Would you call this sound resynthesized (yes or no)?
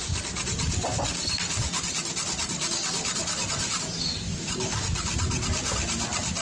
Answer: no